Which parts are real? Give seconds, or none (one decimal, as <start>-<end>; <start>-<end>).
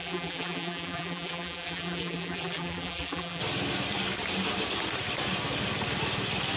3.4-6.6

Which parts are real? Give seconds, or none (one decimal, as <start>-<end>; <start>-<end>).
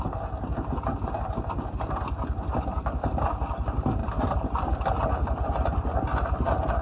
0.0-2.5; 3.4-4.0; 5.0-6.8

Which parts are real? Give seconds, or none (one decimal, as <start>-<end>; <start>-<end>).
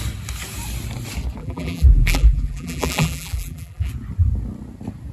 0.0-1.4; 3.9-5.1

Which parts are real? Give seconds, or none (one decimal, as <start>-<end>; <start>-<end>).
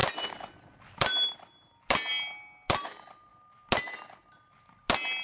0.0-5.2